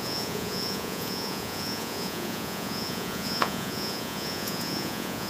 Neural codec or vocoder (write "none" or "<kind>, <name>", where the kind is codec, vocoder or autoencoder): vocoder, Vocos